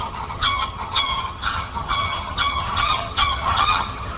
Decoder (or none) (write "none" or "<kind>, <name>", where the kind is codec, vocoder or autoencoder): vocoder, HiFi-GAN